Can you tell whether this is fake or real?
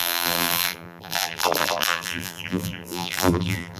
fake